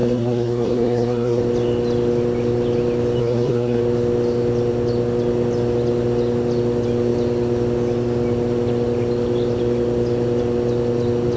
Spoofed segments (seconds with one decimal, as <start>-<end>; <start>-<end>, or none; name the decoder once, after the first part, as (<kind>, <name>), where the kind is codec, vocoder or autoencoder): 0.0-1.4 (codec, SNAC); 3.2-3.8